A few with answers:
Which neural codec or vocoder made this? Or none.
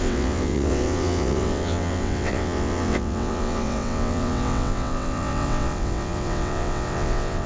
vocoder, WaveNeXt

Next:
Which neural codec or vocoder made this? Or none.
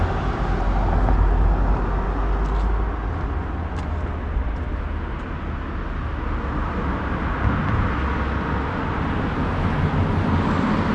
none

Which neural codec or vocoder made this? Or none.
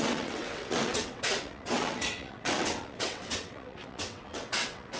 vocoder, WaveNeXt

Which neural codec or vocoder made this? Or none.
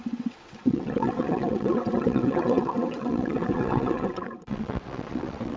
vocoder, WaveNeXt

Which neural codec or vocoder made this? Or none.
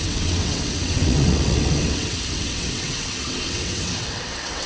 vocoder, WaveNeXt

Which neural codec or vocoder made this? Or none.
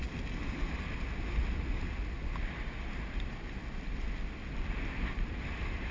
none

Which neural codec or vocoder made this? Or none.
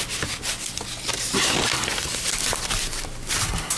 none